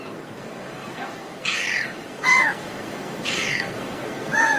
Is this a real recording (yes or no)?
no